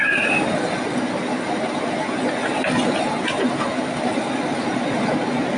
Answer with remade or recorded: recorded